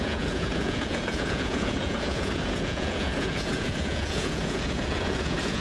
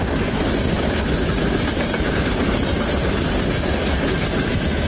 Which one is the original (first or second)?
second